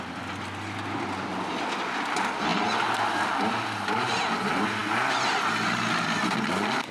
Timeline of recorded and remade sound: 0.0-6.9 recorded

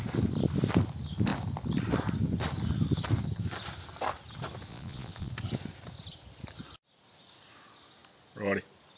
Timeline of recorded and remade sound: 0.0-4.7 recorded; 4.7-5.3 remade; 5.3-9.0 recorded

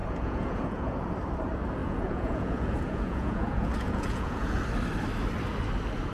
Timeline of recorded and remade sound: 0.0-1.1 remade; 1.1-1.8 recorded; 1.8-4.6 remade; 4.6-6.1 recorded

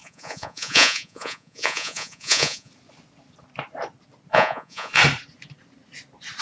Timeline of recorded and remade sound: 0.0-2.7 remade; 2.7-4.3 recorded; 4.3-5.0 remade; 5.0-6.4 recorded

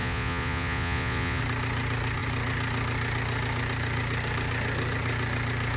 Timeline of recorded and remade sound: 0.0-1.4 remade; 1.4-5.8 recorded

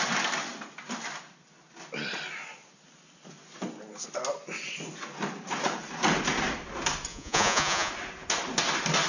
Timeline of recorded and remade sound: 0.0-7.1 recorded; 7.1-7.9 remade; 7.9-9.1 recorded